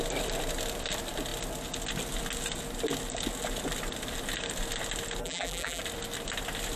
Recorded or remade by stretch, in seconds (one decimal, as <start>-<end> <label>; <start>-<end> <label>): 0.0-5.2 recorded; 5.2-5.8 remade; 5.8-6.8 recorded